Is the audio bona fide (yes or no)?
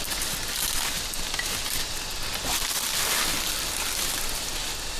yes